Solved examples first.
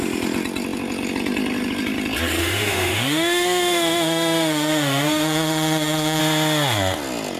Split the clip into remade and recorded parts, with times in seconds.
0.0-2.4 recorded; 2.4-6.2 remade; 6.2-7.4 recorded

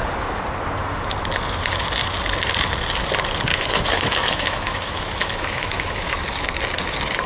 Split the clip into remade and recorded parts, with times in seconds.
0.0-3.5 recorded; 3.5-6.2 remade; 6.2-7.3 recorded

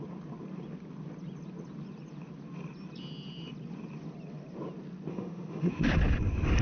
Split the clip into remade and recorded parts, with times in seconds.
0.0-5.1 recorded; 5.1-5.7 remade; 5.7-6.6 recorded

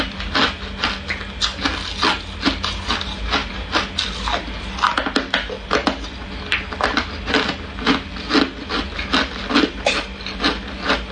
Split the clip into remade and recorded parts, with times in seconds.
0.0-11.1 recorded

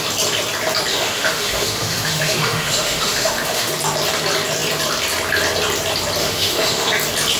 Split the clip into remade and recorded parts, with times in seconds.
0.0-0.9 recorded; 0.9-3.7 remade; 3.7-6.2 recorded; 6.2-6.9 remade; 6.9-7.4 recorded

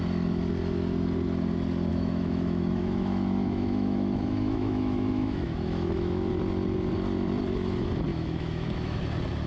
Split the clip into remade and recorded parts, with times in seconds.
0.0-1.9 recorded; 1.9-6.3 remade; 6.3-8.1 recorded; 8.1-9.0 remade; 9.0-9.5 recorded